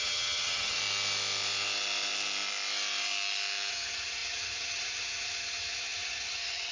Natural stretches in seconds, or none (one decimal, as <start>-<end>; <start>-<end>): 0.8-3.7